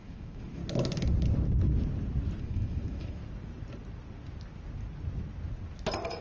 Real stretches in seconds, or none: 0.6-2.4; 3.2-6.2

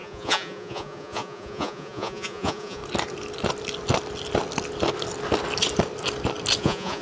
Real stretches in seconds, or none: 2.8-6.6